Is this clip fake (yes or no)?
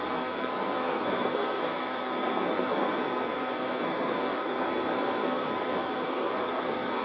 yes